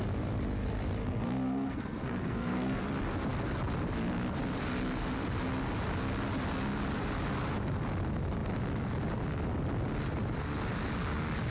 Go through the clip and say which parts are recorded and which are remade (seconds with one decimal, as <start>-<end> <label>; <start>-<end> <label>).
0.0-1.0 recorded; 1.0-2.8 remade; 2.8-11.5 recorded